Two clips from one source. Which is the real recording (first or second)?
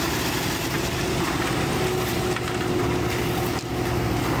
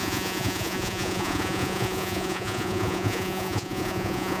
first